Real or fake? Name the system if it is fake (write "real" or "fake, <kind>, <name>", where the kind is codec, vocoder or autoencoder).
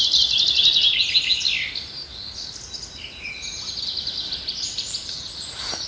real